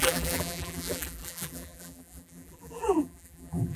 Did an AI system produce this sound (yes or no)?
yes